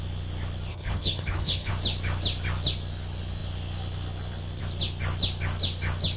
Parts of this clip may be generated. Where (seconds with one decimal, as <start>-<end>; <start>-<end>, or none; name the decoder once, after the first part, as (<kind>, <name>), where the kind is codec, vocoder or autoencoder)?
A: 0.7-1.7 (codec, HILCodec)